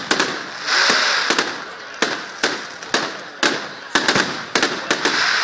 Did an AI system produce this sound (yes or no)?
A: no